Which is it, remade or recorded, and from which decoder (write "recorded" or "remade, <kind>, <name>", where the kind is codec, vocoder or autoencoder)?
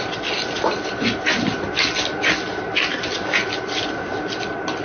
recorded